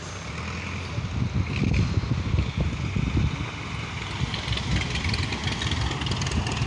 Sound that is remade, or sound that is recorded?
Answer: recorded